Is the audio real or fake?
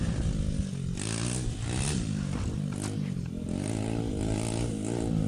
real